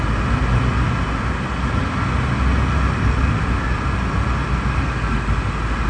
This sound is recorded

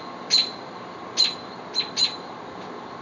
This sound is recorded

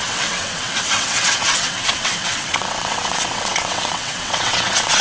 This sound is remade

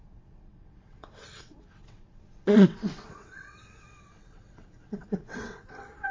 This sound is remade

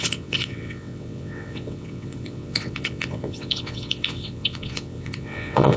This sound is remade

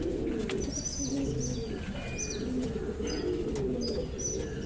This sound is recorded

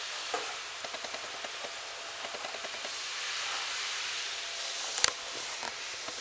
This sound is recorded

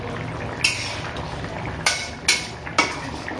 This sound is recorded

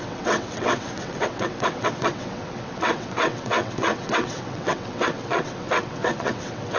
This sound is remade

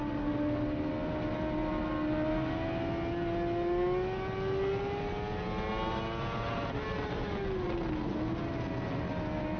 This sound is recorded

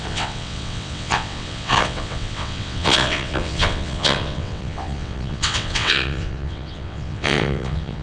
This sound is remade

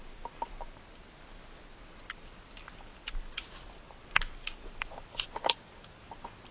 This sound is recorded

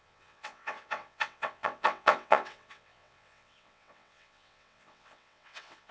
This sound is remade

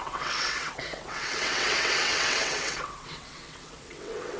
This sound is remade